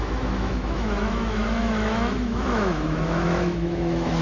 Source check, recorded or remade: remade